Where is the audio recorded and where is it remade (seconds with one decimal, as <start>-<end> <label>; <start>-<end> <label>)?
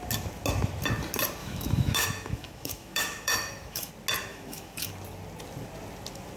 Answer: 0.0-1.4 recorded; 1.4-3.9 remade; 3.9-4.3 recorded; 4.3-4.9 remade; 4.9-6.4 recorded